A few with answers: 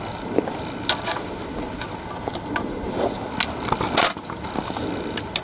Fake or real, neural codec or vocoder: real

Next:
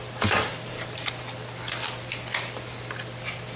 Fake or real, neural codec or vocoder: real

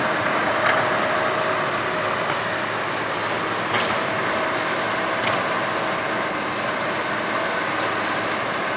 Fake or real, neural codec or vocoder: real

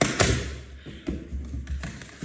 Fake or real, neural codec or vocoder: real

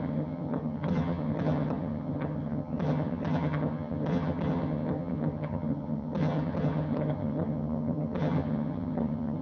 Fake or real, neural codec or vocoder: fake, vocoder, HiFi-GAN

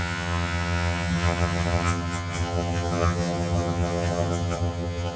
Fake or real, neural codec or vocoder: fake, vocoder, HiFi-GAN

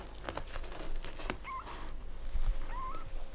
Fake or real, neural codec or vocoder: real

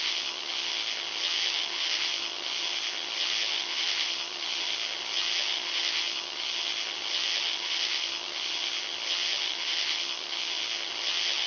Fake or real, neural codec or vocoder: fake, vocoder, HiFi-GAN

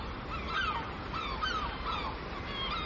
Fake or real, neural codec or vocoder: real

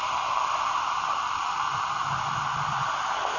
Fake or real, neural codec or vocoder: real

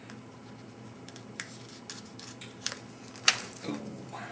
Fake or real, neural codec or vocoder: real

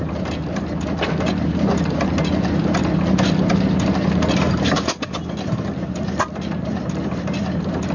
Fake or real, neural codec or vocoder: real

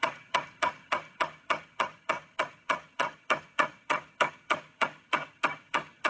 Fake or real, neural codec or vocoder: fake, vocoder, HiFi-GAN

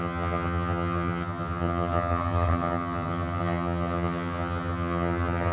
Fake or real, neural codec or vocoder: fake, vocoder, HiFi-GAN